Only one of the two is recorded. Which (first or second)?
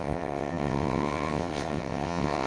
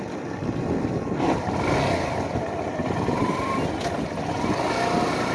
second